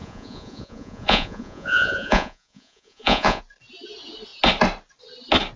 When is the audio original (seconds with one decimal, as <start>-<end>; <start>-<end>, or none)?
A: 3.4-5.6